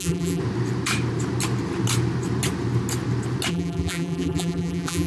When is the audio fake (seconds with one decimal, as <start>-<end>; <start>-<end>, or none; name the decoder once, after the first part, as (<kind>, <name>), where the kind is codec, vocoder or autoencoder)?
0.0-0.4 (vocoder, BigVGAN v2); 3.5-5.1